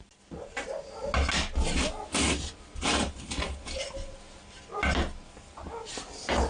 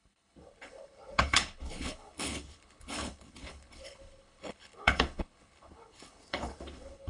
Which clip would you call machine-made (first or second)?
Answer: second